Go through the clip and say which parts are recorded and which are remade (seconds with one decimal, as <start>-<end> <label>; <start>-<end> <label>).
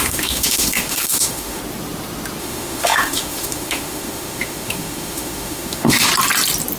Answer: 0.0-1.6 remade; 1.6-2.4 recorded; 2.4-6.1 remade; 6.1-6.8 recorded